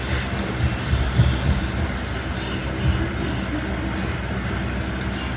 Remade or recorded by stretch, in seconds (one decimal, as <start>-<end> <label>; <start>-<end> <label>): 0.0-5.4 recorded